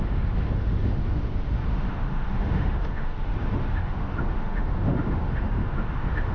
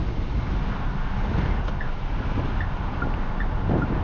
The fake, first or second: first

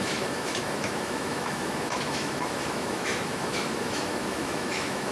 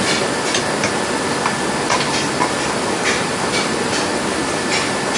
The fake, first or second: first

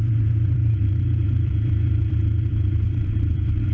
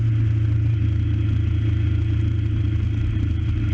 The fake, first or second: first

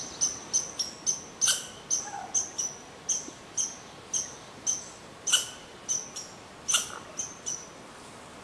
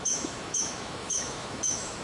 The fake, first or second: second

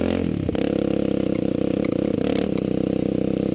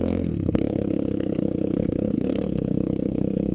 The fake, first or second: second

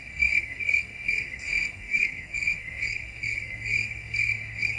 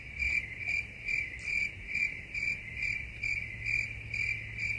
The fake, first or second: first